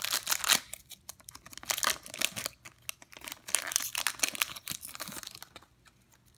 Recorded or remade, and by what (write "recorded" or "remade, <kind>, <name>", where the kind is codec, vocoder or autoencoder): recorded